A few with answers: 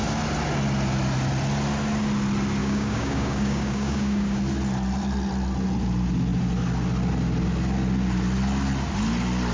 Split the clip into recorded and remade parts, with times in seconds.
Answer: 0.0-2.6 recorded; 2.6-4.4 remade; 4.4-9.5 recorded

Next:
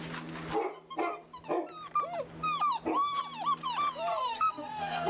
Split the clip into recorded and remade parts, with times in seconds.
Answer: 0.0-4.1 recorded; 4.1-5.1 remade

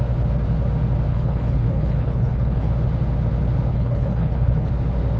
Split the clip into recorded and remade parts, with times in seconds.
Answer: 0.0-1.1 recorded; 1.1-2.7 remade; 2.7-3.7 recorded; 3.7-4.7 remade; 4.7-5.2 recorded

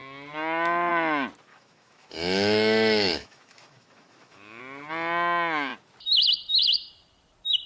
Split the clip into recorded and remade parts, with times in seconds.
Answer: 0.0-1.5 recorded; 1.5-4.6 remade; 4.6-7.7 recorded

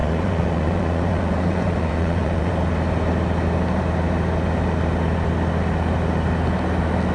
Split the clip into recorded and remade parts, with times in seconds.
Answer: 0.0-2.5 remade; 2.5-7.1 recorded